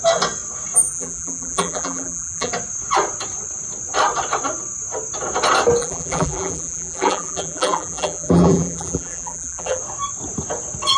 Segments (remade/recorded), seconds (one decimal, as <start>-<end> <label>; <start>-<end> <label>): 0.0-0.9 recorded; 0.9-2.5 remade; 2.5-5.8 recorded; 5.8-9.8 remade; 9.8-11.0 recorded